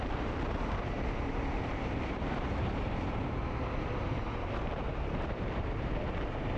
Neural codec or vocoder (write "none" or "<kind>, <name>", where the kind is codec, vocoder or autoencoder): vocoder, BigVGAN v2